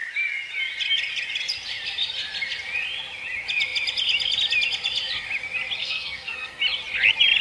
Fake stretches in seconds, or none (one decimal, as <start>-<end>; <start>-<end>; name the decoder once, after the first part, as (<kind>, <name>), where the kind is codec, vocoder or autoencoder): 5.8-6.6 (codec, SNAC)